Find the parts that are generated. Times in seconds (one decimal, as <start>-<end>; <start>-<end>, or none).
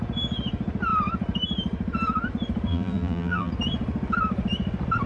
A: 2.7-3.5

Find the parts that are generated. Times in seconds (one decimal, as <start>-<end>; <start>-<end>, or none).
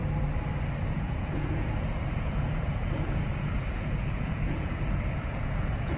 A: 0.9-6.0